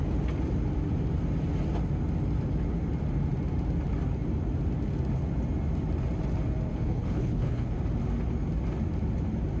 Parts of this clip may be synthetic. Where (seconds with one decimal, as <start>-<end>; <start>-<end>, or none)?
6.7-7.8